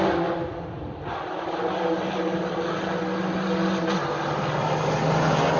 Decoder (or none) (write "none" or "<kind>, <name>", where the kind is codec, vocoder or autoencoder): none